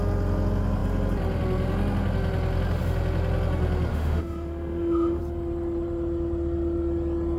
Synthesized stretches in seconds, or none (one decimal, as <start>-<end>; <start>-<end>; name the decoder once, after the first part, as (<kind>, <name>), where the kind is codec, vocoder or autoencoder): 3.9-5.2 (autoencoder, DAC-VAE)